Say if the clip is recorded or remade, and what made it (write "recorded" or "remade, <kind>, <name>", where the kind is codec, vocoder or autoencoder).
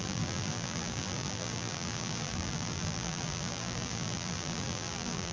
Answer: remade, vocoder, BigVGAN v2